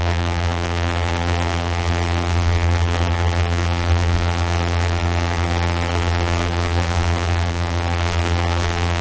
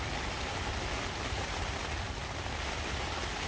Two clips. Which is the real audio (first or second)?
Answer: second